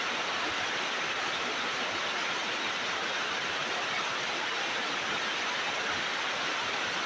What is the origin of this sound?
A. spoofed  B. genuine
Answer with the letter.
B